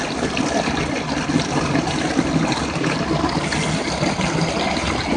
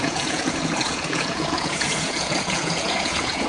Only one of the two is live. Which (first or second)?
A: first